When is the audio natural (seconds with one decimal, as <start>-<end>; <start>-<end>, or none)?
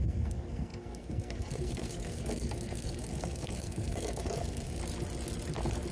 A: 4.8-5.9